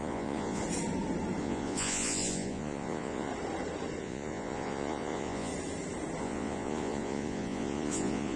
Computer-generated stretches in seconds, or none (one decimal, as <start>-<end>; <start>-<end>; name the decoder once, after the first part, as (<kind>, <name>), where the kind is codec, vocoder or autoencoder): 0.0-0.6 (vocoder, Vocos); 1.4-3.3; 4.0-5.5; 6.2-8.4